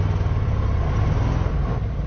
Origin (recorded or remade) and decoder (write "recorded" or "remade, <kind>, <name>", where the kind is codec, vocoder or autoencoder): recorded